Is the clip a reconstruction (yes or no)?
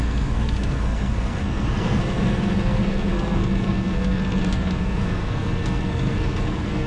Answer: yes